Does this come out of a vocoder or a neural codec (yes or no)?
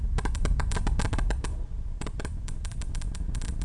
yes